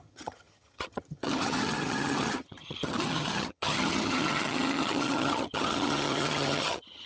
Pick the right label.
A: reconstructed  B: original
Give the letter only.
A